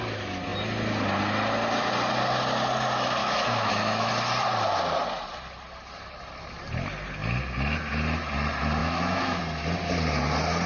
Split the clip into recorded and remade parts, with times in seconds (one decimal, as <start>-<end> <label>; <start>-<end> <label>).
0.0-3.2 recorded; 3.2-4.1 remade; 4.1-8.8 recorded; 8.8-9.4 remade; 9.4-10.7 recorded